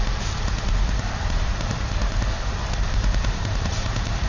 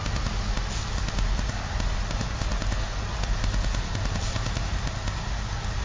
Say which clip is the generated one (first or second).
first